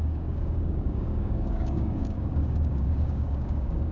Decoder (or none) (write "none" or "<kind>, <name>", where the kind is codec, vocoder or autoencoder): codec, DAC